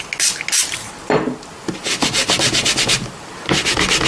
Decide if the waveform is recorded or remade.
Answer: recorded